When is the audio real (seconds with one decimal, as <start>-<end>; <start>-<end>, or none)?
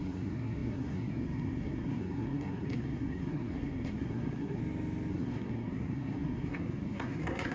4.6-5.1